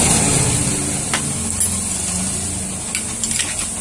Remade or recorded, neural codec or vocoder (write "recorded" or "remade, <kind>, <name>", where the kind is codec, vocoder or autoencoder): recorded